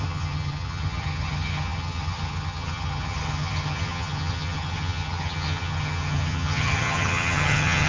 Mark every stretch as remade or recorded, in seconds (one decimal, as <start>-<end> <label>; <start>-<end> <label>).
0.0-7.9 remade